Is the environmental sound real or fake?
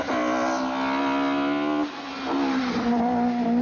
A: real